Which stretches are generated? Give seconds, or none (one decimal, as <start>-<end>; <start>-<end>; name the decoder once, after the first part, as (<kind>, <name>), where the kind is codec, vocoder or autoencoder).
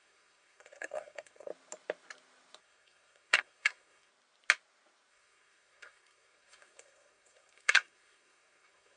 0.0-1.5 (codec, SNAC); 2.6-4.1; 5.1-9.0